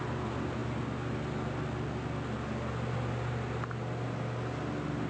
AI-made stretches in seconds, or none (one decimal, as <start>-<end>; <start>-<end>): none